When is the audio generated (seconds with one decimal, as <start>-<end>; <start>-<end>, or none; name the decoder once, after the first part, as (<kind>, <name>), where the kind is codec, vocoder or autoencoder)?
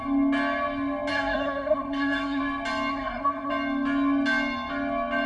1.1-2.4 (codec, SNAC); 2.9-3.5